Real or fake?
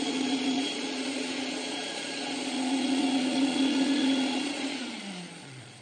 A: fake